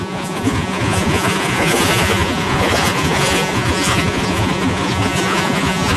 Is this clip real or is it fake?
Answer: fake